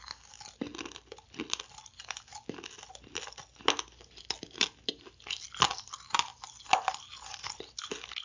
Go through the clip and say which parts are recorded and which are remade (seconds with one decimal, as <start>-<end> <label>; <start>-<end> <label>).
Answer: 0.0-8.2 recorded